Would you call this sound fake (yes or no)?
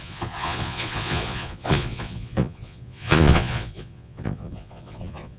yes